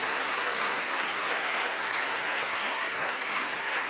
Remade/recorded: remade